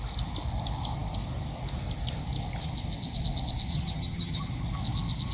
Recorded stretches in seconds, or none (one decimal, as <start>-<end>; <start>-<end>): 0.0-3.7; 4.5-5.3